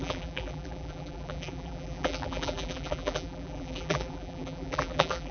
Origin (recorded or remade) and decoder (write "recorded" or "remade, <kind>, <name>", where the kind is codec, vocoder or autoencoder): remade, vocoder, BigVGAN v2